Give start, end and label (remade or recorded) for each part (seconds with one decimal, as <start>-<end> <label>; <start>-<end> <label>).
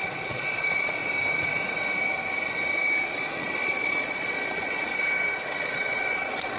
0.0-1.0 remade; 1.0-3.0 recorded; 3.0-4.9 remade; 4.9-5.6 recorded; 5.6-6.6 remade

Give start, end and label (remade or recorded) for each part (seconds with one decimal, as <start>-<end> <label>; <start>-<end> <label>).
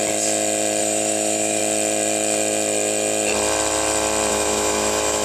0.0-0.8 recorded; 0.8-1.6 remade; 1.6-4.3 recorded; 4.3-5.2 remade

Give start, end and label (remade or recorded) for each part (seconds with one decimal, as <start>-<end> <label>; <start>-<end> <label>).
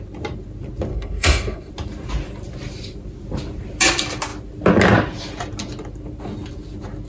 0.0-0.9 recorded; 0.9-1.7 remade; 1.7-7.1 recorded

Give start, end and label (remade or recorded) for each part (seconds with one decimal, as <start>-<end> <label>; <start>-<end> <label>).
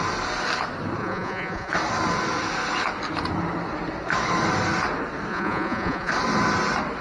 0.0-1.0 recorded; 1.0-1.7 remade; 1.7-5.3 recorded; 5.3-6.1 remade; 6.1-7.0 recorded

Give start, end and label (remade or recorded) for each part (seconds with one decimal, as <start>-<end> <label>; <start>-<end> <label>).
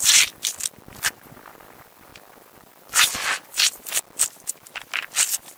0.0-5.6 recorded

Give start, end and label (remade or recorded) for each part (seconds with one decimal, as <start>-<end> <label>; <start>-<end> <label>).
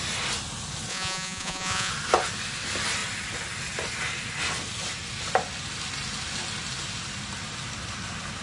0.0-0.9 recorded; 0.9-1.9 remade; 1.9-8.4 recorded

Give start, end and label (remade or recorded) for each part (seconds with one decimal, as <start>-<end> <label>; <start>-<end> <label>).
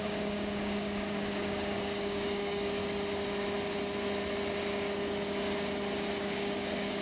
0.0-2.8 remade; 2.8-6.2 recorded; 6.2-7.0 remade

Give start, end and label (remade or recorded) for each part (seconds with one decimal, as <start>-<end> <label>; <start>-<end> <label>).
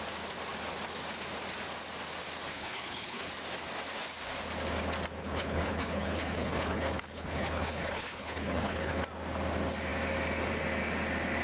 0.0-2.5 recorded; 2.5-3.3 remade; 3.3-5.2 recorded; 5.2-9.0 remade; 9.0-11.4 recorded